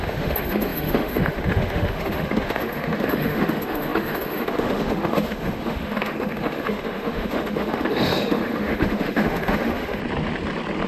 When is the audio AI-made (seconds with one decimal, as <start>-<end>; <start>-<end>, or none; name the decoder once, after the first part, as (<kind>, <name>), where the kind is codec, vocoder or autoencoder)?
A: 0.0-10.0 (autoencoder, DAC-VAE)